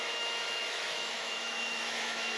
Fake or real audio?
fake